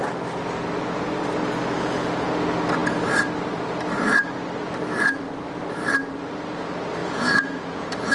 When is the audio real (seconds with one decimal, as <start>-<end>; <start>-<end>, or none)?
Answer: 0.0-7.0